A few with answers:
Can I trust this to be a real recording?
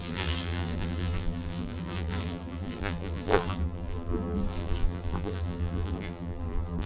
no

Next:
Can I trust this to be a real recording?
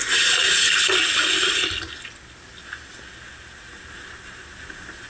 yes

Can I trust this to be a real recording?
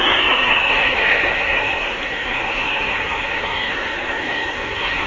no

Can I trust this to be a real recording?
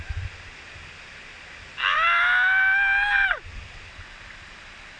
yes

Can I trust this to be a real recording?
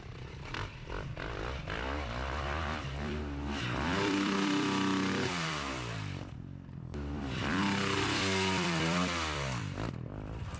no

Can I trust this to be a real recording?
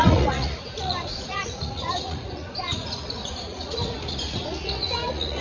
no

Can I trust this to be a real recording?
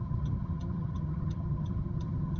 no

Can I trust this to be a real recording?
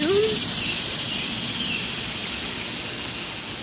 yes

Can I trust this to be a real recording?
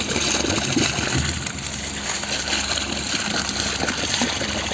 yes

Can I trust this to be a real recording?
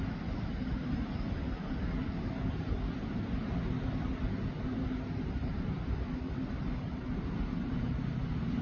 yes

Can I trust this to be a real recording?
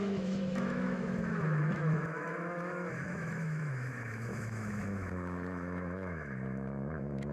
no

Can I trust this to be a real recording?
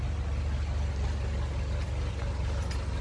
yes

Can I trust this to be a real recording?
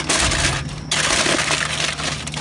yes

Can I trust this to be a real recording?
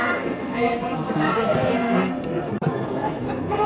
no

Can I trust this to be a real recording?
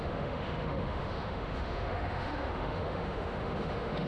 no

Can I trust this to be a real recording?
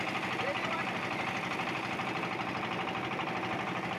yes